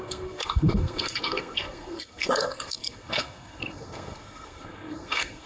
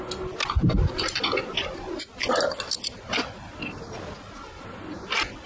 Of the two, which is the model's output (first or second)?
first